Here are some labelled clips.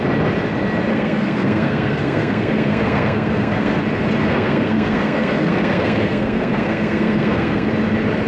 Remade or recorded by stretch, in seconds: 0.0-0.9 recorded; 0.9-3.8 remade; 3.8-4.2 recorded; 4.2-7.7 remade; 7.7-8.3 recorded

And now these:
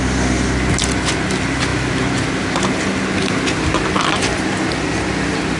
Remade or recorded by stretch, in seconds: 0.0-5.6 recorded

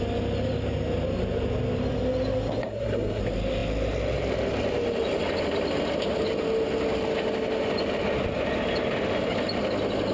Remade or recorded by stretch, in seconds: 0.0-2.6 recorded; 2.6-3.2 remade; 3.2-10.1 recorded

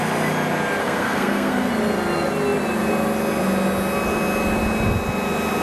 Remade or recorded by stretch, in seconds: 0.0-0.8 recorded; 0.8-1.7 remade; 1.7-5.6 recorded

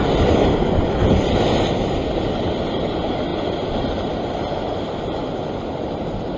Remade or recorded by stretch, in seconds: 0.0-6.4 recorded

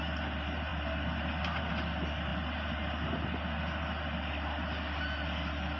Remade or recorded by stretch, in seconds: 0.0-5.8 recorded